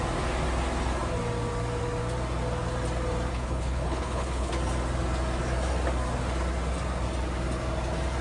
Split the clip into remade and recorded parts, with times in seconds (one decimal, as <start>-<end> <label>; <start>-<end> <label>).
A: 0.0-3.3 recorded; 3.3-4.5 remade; 4.5-8.2 recorded